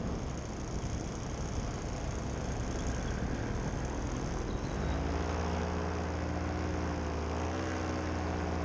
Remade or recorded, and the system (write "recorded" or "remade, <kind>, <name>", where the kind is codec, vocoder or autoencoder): recorded